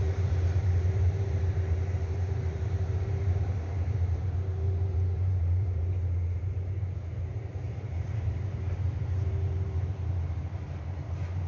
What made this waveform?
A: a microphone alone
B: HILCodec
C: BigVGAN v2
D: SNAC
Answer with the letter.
C